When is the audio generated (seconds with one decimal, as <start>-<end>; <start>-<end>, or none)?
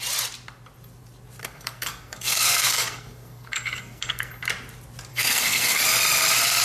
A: 1.4-4.3; 5.1-5.8